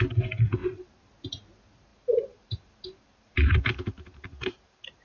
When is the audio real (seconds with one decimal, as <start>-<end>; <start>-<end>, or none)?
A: 0.0-0.6; 1.1-1.9